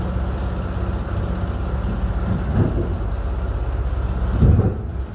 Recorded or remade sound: recorded